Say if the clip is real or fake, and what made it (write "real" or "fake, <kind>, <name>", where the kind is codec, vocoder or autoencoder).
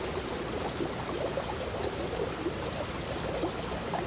real